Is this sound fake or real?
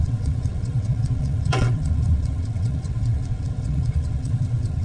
fake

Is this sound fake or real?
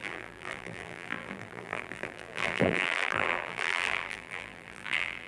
fake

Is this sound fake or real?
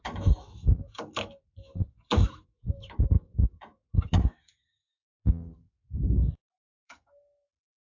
fake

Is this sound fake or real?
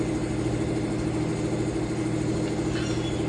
real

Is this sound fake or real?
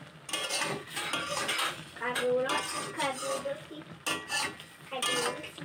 real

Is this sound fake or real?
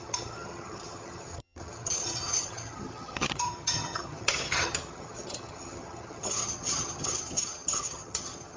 fake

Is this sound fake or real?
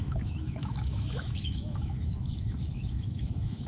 fake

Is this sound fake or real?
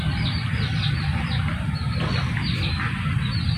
real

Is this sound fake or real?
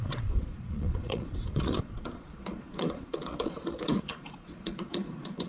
fake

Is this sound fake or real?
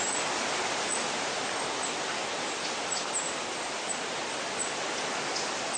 real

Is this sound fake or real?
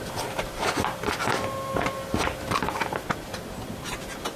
real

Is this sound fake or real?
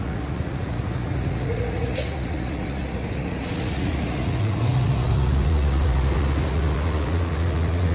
fake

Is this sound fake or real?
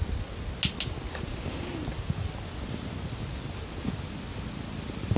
real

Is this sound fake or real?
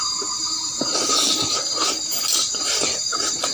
fake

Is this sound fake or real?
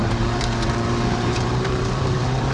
fake